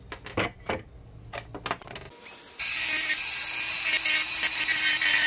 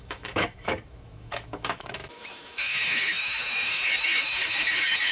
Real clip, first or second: first